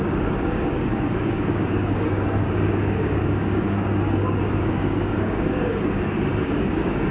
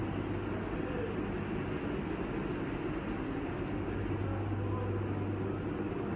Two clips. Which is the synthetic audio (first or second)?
first